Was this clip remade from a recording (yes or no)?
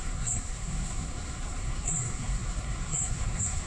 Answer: yes